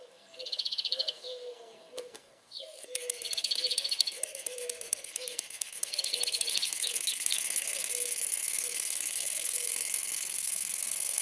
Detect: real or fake fake